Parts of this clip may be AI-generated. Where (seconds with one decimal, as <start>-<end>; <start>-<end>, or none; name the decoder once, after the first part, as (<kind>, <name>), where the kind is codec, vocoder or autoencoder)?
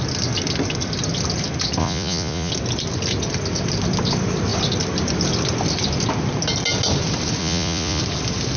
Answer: 1.8-2.5 (vocoder, Vocos); 7.4-8.0